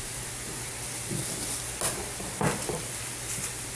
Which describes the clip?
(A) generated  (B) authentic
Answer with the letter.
B